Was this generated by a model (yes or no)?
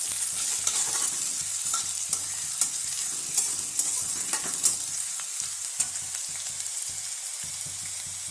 no